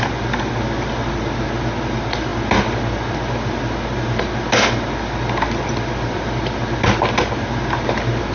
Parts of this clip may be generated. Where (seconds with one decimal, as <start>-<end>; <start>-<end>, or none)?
none